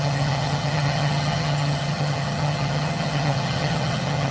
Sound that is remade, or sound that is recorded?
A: remade